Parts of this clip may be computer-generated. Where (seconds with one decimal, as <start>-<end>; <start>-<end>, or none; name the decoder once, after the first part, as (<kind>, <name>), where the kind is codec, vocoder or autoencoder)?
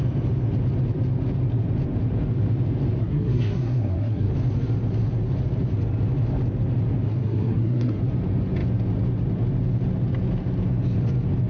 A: 3.0-4.3 (codec, SNAC); 7.1-8.0